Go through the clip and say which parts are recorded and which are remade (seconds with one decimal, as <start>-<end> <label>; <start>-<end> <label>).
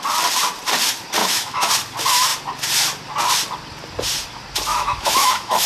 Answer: 0.0-1.2 recorded; 1.2-1.7 remade; 1.7-4.7 recorded; 4.7-5.7 remade